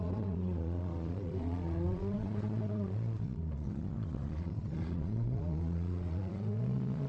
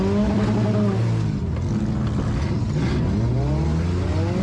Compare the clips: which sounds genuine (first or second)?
second